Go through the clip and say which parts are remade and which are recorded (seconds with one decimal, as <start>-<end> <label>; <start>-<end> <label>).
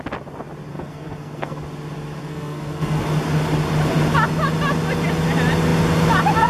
0.0-0.7 recorded; 0.7-1.6 remade; 1.6-2.2 recorded; 2.2-3.0 remade; 3.0-6.5 recorded